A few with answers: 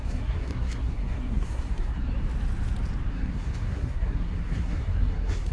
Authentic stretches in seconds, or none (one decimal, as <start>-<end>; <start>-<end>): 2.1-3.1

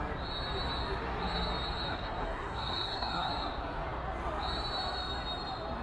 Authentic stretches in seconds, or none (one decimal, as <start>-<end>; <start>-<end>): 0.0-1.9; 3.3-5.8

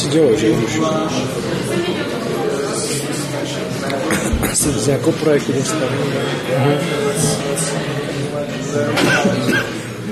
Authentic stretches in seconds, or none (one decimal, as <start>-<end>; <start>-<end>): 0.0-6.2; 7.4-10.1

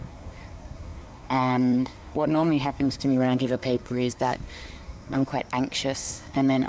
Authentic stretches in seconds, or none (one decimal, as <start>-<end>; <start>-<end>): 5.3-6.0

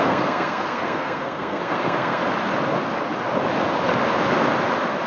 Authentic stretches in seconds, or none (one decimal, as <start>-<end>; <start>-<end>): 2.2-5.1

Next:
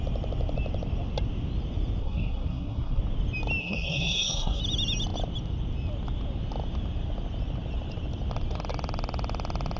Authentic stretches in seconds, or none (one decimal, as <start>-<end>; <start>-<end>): 0.0-2.0; 3.0-3.6; 4.6-9.8